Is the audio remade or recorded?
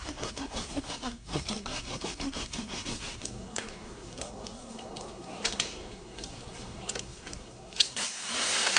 remade